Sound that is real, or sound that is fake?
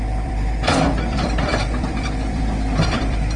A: fake